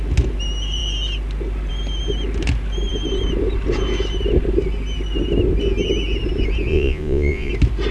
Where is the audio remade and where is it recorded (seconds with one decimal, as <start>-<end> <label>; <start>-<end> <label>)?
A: 0.0-6.7 recorded; 6.7-7.5 remade; 7.5-7.9 recorded